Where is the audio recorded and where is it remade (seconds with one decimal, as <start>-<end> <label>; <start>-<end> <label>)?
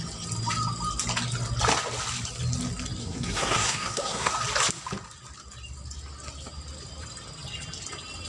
0.0-3.0 recorded; 3.0-4.3 remade; 4.3-8.3 recorded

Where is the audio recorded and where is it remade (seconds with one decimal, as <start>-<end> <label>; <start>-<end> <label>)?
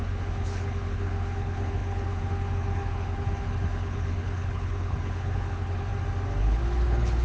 0.0-5.9 remade; 5.9-6.4 recorded; 6.4-7.2 remade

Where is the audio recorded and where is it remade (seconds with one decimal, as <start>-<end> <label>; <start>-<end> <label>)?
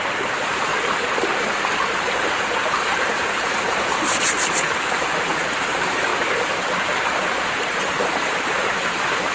0.0-0.7 remade; 0.7-2.3 recorded; 2.3-6.1 remade; 6.1-7.7 recorded; 7.7-9.3 remade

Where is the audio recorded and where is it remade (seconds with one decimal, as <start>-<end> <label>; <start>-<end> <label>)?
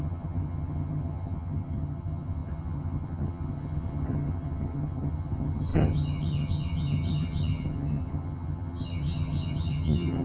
0.0-10.2 remade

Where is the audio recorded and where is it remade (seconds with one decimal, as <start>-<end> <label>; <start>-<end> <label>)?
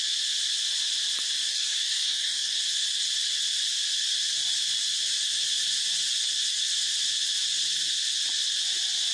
0.0-1.5 recorded; 1.5-2.6 remade; 2.6-9.1 recorded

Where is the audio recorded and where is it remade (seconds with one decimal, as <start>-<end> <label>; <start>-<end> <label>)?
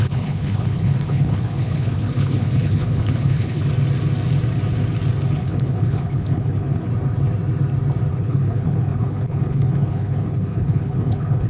0.0-3.7 remade; 3.7-5.4 recorded; 5.4-6.9 remade; 6.9-8.1 recorded; 8.1-11.5 remade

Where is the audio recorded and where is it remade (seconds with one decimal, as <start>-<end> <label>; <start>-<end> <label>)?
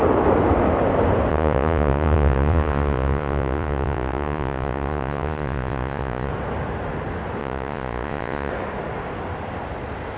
0.0-1.3 recorded; 1.3-6.3 remade; 6.3-7.4 recorded; 7.4-8.5 remade; 8.5-10.2 recorded